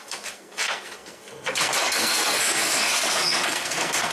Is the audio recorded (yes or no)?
no